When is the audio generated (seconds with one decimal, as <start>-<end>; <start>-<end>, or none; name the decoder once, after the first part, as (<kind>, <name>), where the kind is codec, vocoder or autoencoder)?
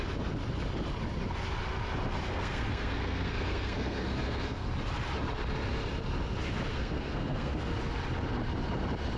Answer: 2.3-4.7 (codec, SNAC); 6.7-7.6